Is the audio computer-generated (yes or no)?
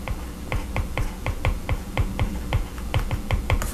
no